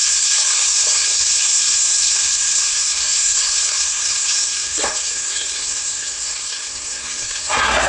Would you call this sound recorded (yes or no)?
no